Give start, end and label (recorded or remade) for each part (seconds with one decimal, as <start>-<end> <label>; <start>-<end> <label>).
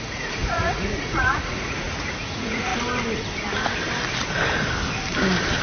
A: 0.0-2.7 remade; 2.7-5.6 recorded